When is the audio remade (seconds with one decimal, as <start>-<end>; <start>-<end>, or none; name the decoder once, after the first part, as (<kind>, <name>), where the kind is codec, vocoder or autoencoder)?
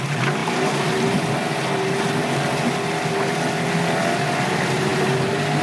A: none